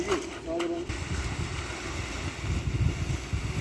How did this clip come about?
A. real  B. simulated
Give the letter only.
A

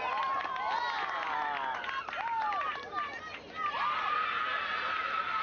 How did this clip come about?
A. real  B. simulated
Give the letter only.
A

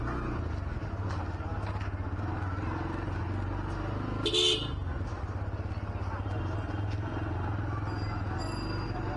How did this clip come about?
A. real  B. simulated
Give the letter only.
A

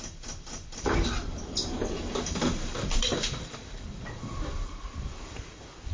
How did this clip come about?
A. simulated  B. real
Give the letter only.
A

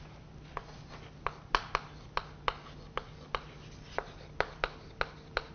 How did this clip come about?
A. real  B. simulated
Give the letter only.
A